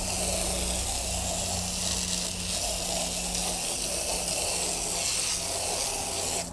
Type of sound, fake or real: real